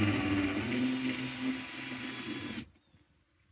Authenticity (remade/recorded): recorded